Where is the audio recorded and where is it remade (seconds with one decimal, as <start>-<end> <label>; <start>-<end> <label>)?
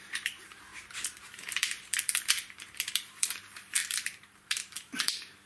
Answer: 0.0-5.5 remade